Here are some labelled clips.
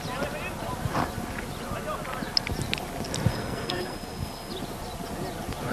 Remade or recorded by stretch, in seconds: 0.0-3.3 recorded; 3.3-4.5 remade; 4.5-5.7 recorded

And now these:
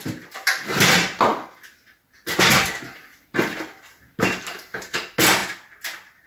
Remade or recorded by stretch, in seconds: 0.0-6.3 recorded